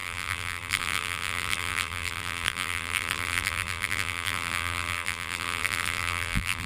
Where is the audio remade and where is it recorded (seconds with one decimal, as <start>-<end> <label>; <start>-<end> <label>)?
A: 0.0-6.7 remade